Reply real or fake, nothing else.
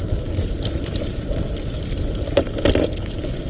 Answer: real